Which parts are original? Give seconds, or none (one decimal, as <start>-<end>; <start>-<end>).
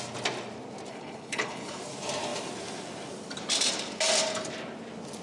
0.0-0.9; 1.8-5.2